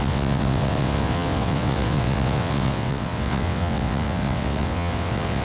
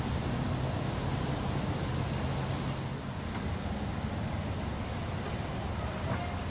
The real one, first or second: second